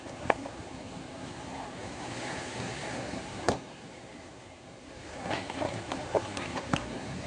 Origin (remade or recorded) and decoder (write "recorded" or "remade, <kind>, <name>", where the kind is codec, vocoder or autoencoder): remade, codec, SNAC